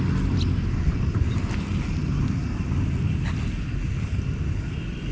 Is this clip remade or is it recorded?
recorded